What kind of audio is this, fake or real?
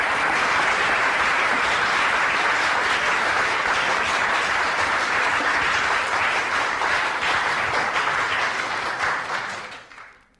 fake